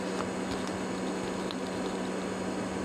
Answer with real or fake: real